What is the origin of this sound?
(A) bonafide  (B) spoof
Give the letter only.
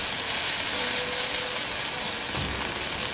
A